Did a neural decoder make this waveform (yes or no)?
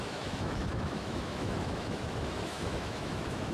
yes